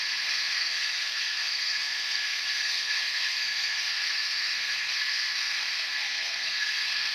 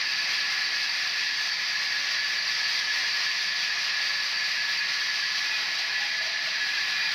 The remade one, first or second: first